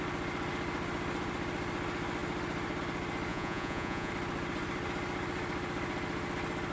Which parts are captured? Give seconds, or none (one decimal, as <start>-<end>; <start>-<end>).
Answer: 0.0-3.3; 4.1-6.7